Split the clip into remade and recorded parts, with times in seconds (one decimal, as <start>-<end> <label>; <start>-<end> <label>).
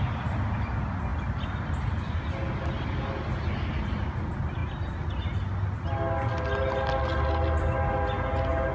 0.0-8.7 recorded